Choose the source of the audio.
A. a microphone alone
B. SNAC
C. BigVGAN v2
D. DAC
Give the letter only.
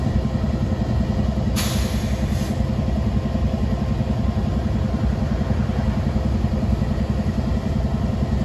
A